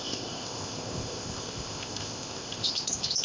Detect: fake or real fake